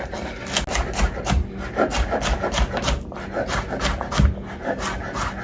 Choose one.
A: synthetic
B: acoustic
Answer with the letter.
B